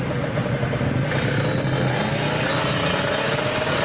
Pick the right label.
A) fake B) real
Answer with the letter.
B